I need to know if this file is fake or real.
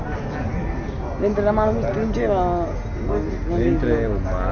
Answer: real